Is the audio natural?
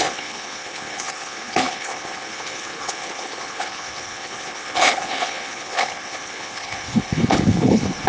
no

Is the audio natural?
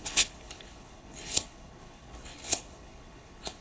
no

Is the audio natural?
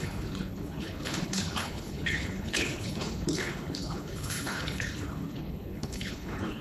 no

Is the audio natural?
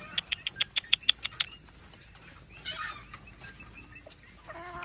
yes